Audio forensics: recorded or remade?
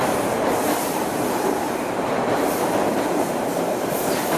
remade